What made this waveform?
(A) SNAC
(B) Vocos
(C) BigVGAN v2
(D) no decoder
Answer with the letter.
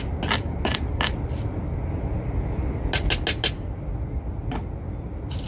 D